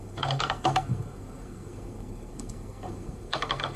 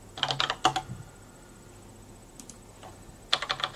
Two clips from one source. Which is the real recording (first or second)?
second